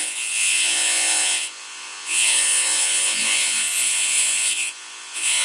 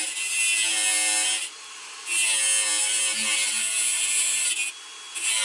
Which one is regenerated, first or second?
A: first